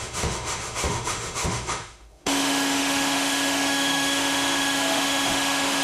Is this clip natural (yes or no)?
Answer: no